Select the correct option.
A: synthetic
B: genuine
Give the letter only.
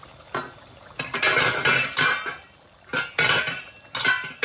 B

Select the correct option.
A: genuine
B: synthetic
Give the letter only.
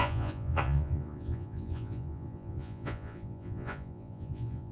B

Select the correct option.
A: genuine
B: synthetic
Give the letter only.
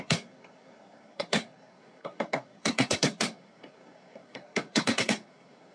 B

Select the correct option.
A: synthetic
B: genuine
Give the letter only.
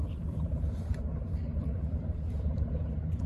A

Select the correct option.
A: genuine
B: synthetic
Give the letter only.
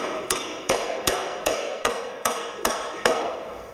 B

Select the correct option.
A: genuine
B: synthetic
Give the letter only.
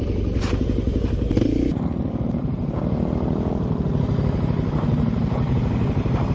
A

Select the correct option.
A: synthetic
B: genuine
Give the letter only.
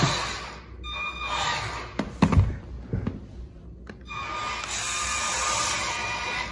B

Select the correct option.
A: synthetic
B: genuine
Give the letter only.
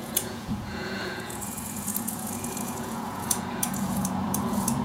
A